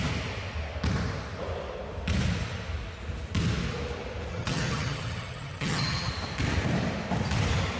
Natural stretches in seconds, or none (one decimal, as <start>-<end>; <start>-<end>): 0.0-4.3; 6.1-7.8

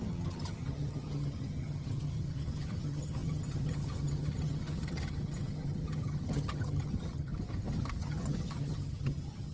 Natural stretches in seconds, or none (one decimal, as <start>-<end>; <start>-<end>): 7.3-8.0